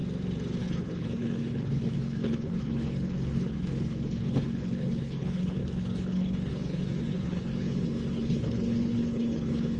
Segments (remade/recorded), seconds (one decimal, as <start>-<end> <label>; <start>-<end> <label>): 0.0-0.6 recorded; 0.6-9.8 remade

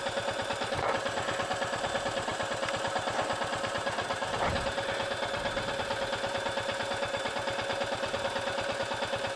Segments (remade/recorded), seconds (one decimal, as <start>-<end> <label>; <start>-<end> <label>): 0.0-9.4 recorded

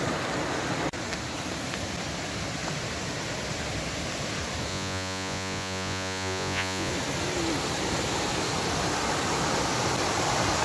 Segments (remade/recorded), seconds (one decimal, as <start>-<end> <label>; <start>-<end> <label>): 0.0-4.7 recorded; 4.7-6.9 remade; 6.9-10.6 recorded

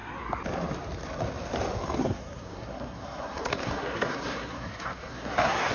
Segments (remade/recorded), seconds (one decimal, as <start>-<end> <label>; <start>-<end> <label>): 0.0-2.0 recorded; 2.0-5.7 remade